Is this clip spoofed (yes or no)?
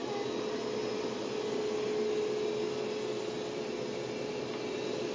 no